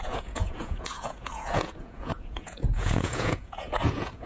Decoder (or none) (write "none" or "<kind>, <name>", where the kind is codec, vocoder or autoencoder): vocoder, Vocos